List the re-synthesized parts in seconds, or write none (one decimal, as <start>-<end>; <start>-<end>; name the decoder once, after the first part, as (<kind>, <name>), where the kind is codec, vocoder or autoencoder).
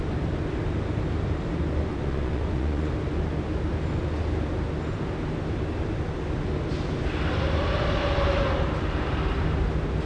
1.9-2.9 (vocoder, Vocos)